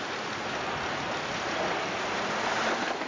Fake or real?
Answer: real